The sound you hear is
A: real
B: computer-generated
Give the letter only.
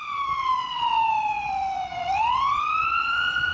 B